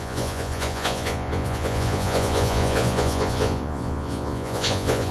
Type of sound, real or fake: fake